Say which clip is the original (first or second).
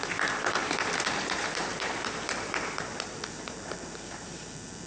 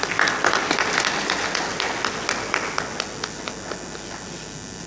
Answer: second